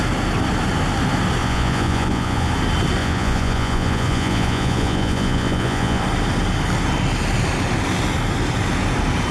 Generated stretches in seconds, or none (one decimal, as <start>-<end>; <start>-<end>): 1.4-2.5; 3.0-6.0